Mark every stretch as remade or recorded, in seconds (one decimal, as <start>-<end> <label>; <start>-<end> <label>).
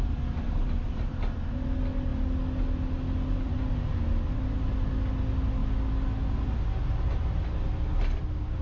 0.0-8.6 recorded